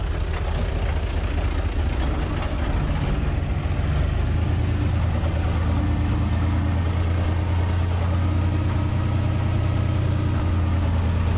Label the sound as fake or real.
real